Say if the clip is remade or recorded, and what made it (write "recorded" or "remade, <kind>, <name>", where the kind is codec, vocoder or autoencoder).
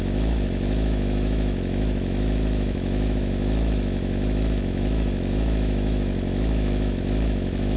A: remade, autoencoder, DAC-VAE